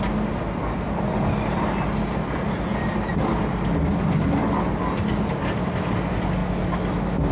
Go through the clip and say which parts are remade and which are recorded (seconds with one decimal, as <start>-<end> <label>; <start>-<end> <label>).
0.0-7.3 recorded